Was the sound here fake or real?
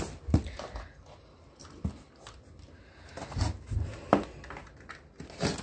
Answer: real